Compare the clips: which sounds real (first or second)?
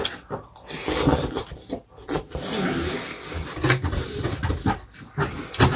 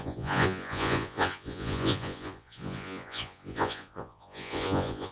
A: first